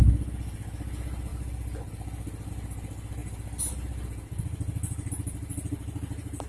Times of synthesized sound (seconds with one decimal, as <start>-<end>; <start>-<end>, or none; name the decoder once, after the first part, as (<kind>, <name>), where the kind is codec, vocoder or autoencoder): none